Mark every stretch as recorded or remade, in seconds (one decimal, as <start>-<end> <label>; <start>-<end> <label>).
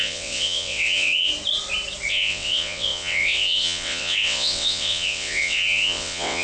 0.0-1.3 remade; 1.3-2.1 recorded; 2.1-6.4 remade